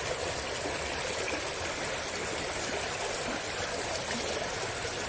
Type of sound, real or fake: real